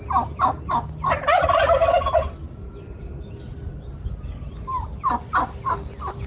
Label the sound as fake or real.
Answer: real